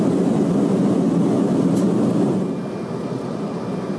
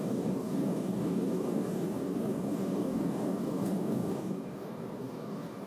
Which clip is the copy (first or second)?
second